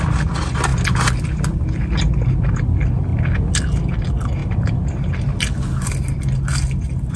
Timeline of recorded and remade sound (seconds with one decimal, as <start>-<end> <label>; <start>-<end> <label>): 0.0-7.2 recorded